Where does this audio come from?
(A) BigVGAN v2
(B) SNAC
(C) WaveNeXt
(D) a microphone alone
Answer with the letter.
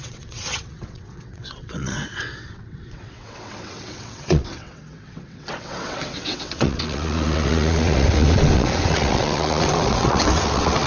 C